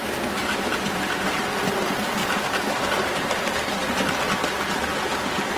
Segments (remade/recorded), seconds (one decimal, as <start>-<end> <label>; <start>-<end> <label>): 0.0-0.4 recorded; 0.4-1.4 remade; 1.4-2.2 recorded; 2.2-3.4 remade; 3.4-5.6 recorded